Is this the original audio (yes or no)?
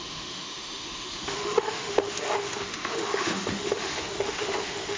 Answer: no